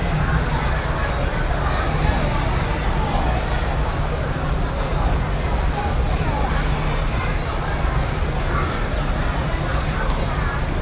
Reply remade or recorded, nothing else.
recorded